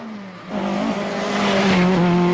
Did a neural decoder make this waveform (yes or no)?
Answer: no